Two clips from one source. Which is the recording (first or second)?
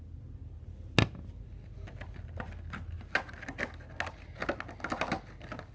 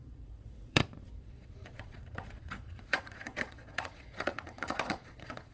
first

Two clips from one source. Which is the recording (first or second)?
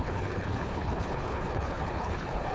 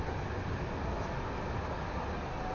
second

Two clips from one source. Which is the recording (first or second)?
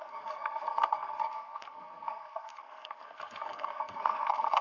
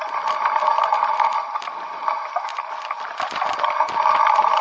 second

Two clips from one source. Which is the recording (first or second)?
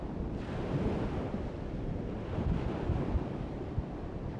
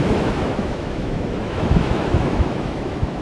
first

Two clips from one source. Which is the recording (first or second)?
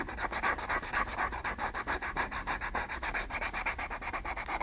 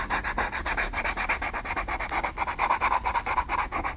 second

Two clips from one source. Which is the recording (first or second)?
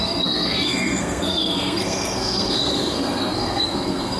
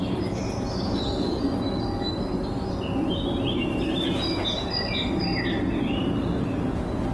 second